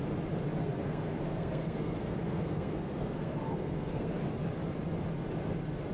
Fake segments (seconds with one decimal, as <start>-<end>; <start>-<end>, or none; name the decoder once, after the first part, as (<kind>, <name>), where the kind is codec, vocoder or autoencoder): 0.6-4.1 (codec, SNAC)